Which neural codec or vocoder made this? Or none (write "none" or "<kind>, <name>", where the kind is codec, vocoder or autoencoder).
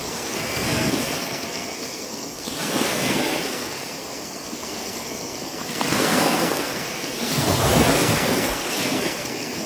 codec, SNAC